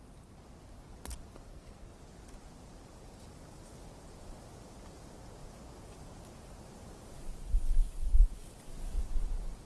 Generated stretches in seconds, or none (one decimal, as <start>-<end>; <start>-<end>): 1.5-2.0